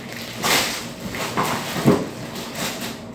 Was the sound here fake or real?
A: real